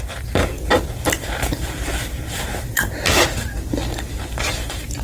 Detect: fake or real fake